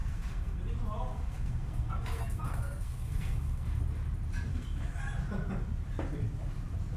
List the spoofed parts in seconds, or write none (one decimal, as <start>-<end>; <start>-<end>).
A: 0.0-0.6; 1.1-3.8; 4.5-5.0